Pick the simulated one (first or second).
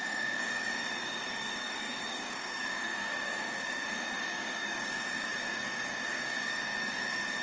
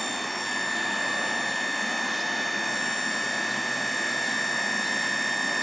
first